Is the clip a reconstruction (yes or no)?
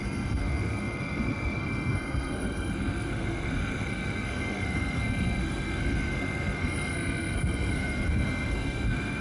yes